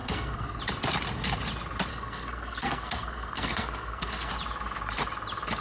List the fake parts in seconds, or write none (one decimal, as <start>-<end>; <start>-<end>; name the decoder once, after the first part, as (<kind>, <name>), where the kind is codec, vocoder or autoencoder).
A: 0.0-0.6 (codec, SNAC); 1.9-4.3